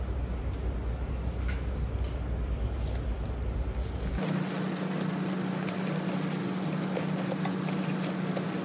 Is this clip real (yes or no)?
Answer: yes